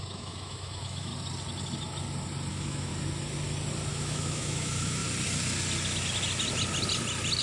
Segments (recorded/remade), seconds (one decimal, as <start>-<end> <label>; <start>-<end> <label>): 0.0-1.1 remade; 1.1-2.5 recorded; 2.5-2.9 remade; 2.9-3.9 recorded; 3.9-5.0 remade; 5.0-7.4 recorded